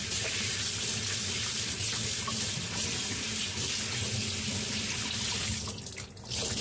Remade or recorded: recorded